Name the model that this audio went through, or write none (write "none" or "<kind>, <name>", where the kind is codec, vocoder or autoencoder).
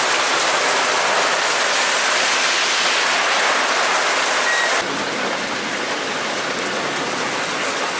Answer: none